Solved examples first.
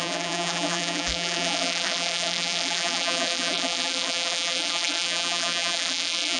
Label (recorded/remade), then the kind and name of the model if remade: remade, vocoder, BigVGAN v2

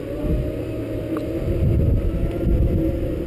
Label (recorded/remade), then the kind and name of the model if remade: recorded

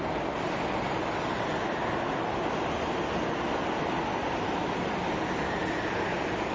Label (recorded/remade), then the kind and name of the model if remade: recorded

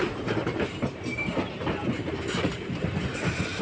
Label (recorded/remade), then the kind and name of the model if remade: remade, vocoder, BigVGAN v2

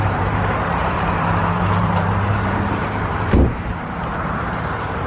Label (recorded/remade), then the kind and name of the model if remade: remade, vocoder, BigVGAN v2